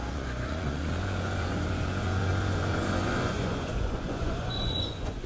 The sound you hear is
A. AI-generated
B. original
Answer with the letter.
A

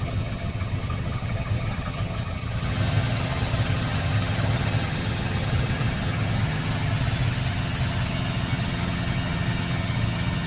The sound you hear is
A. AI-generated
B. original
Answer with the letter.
A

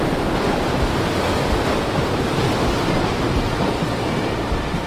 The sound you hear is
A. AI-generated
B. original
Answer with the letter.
B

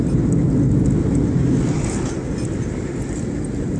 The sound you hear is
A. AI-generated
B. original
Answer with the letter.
B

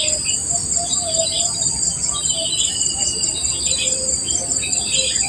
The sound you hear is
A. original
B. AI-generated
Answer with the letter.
A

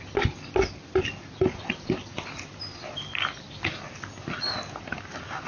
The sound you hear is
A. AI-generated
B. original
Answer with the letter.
B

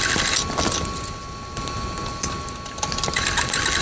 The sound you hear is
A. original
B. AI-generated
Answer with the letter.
A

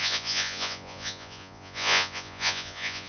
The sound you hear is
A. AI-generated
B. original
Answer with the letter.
A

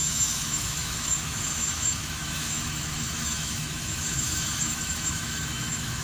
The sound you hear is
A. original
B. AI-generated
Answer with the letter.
B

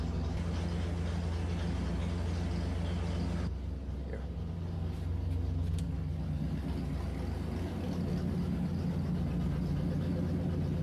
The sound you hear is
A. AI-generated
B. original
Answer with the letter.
B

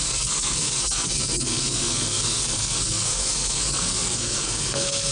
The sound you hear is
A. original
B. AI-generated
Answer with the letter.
B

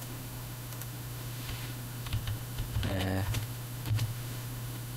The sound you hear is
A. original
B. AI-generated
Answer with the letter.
B